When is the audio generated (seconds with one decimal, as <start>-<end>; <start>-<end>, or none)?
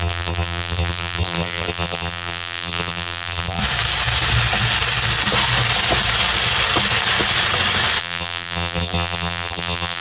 0.0-3.6; 8.0-10.0